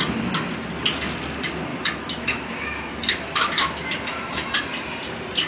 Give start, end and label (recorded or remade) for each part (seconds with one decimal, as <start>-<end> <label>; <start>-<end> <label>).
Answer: 0.0-1.7 recorded; 1.7-4.5 remade; 4.5-5.5 recorded

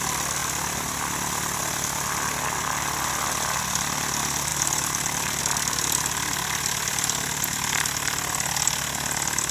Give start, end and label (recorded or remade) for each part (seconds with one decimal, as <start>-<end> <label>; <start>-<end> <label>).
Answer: 0.0-4.5 recorded; 4.5-5.4 remade; 5.4-9.5 recorded